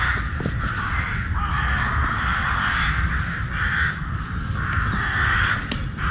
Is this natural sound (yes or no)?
yes